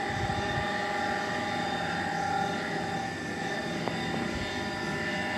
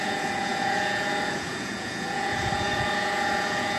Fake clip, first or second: second